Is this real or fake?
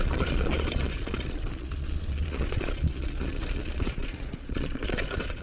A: fake